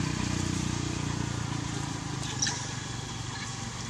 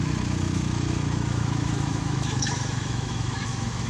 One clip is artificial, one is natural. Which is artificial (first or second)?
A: second